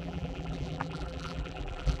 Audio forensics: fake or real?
fake